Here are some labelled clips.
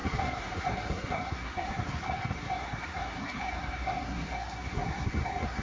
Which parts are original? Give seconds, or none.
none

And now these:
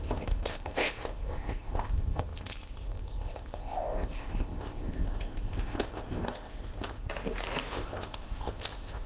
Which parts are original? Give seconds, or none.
7.0-7.7

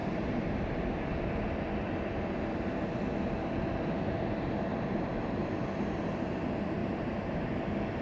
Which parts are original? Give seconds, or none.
1.4-6.8; 7.5-8.0

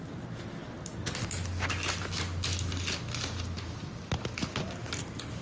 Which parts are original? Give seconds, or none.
0.0-5.4

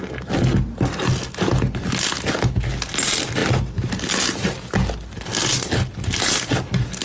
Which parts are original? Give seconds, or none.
0.0-7.0

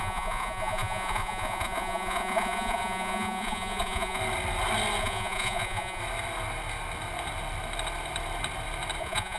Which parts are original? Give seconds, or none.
4.2-5.0; 6.0-9.0

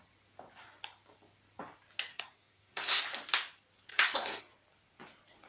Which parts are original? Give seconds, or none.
0.0-2.1; 3.0-3.9; 4.4-5.5